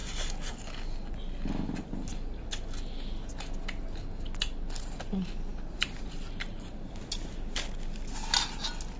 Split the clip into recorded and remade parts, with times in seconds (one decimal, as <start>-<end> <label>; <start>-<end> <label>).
0.0-5.5 recorded; 5.5-6.0 remade; 6.0-9.0 recorded